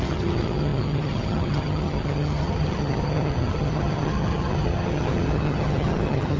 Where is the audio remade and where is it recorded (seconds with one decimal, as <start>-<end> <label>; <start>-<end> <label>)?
0.0-6.4 remade